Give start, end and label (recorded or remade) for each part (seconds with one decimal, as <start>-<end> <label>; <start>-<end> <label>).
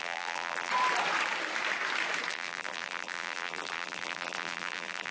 0.0-0.7 remade; 0.7-2.3 recorded; 2.3-5.1 remade